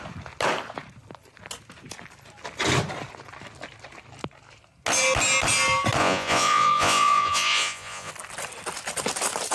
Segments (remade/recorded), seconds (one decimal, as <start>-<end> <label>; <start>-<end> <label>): 0.0-6.0 recorded; 6.0-8.1 remade; 8.1-9.5 recorded

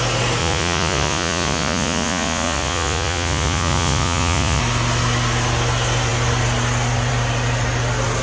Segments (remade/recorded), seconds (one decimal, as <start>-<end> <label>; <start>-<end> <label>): 0.0-0.4 recorded; 0.4-4.6 remade; 4.6-8.2 recorded

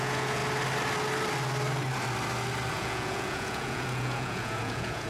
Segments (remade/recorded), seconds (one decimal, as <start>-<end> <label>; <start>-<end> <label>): 0.0-0.4 remade; 0.4-2.7 recorded; 2.7-5.1 remade

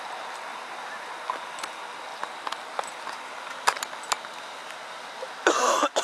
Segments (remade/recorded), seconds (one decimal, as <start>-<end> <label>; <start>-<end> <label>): 0.0-6.0 recorded

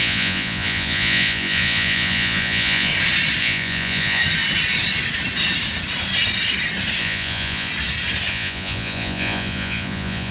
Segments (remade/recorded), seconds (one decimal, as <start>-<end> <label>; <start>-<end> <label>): 0.0-2.9 remade; 2.9-3.4 recorded; 3.4-4.2 remade; 4.2-7.0 recorded; 7.0-7.7 remade; 7.7-8.3 recorded; 8.3-10.3 remade

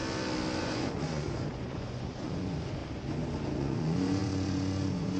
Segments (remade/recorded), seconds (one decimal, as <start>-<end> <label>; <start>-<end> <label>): 0.0-0.6 recorded; 0.6-2.8 remade; 2.8-3.6 recorded; 3.6-5.2 remade

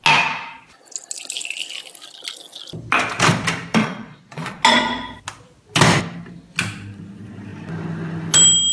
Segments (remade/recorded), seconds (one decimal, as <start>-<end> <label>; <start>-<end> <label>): 0.0-3.8 recorded; 3.8-4.6 remade; 4.6-8.7 recorded